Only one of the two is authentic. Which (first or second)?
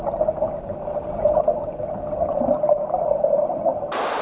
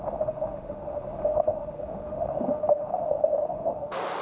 first